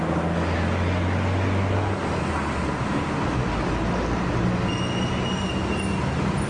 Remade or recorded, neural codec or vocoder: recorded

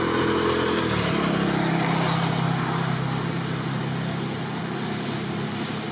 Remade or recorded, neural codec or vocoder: recorded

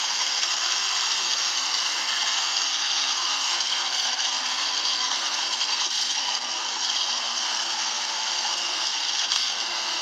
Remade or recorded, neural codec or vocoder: remade, codec, SNAC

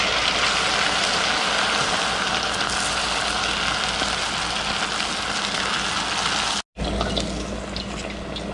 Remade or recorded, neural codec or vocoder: recorded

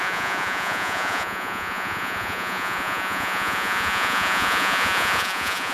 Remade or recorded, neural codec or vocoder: remade, vocoder, Vocos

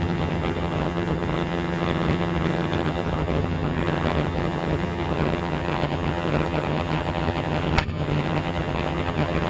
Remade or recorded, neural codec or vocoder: remade, vocoder, HiFi-GAN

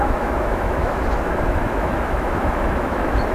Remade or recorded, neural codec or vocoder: remade, autoencoder, DAC-VAE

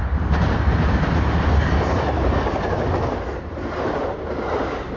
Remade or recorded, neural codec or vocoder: recorded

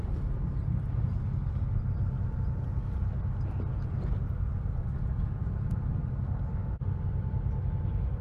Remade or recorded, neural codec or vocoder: recorded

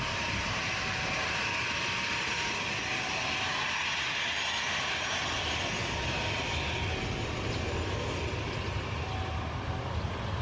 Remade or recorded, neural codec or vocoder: recorded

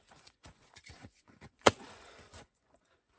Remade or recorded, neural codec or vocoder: remade, vocoder, Vocos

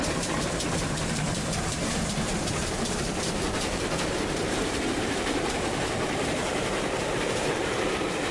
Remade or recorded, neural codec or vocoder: remade, vocoder, BigVGAN v2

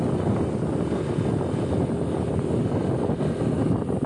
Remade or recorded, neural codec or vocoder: recorded